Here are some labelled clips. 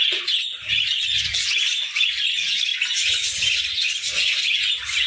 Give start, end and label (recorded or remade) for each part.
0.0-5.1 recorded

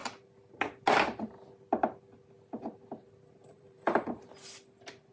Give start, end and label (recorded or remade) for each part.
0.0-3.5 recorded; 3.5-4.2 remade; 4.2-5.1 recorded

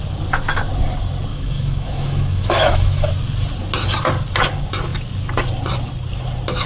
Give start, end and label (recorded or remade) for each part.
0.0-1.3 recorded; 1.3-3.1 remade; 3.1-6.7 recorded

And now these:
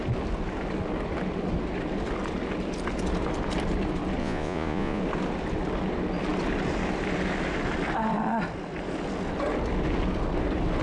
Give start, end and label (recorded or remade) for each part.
0.0-4.2 recorded; 4.2-5.0 remade; 5.0-10.8 recorded

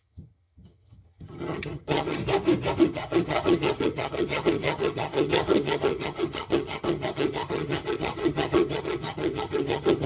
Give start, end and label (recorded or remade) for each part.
0.0-2.2 remade; 2.2-2.8 recorded; 2.8-10.1 remade

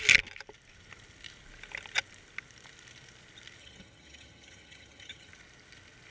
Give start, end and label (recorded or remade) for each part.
0.0-3.6 recorded; 3.6-5.3 remade; 5.3-6.1 recorded

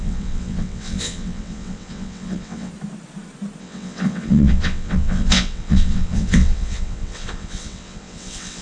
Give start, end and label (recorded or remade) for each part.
0.0-2.7 remade; 2.7-3.6 recorded; 3.6-8.6 remade